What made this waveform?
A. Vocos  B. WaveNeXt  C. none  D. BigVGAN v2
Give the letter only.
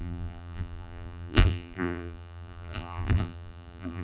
D